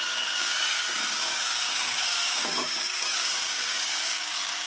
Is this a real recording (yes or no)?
no